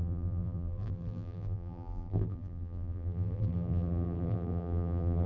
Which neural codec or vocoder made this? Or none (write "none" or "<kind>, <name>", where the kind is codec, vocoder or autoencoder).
vocoder, BigVGAN v2